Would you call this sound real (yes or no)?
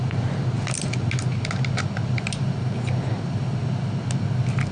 yes